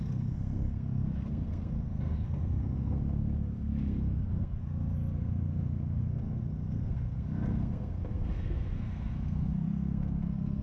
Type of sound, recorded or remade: remade